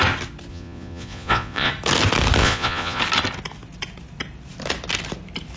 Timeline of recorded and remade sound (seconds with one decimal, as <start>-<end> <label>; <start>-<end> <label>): 0.0-0.5 recorded; 0.5-1.7 remade; 1.7-2.4 recorded; 2.4-3.0 remade; 3.0-5.6 recorded